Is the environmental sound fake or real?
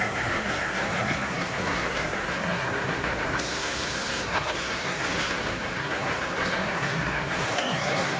fake